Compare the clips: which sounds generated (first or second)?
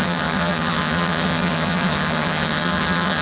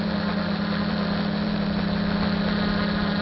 first